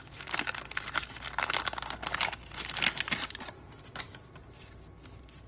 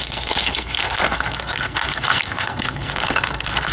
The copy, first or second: second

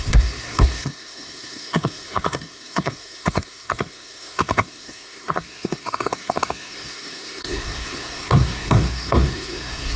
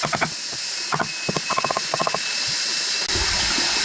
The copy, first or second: first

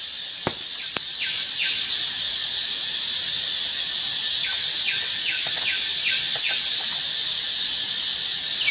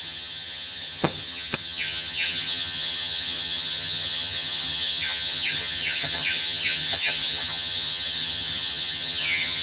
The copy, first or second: second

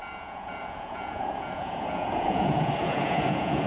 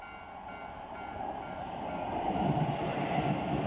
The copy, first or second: first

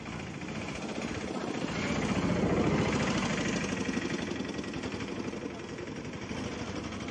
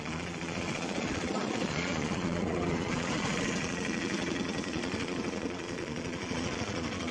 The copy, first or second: second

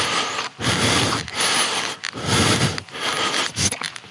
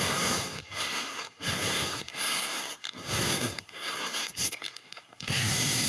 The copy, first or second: second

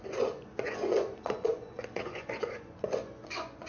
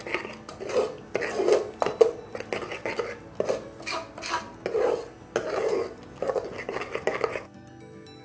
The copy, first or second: first